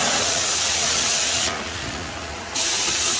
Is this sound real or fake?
fake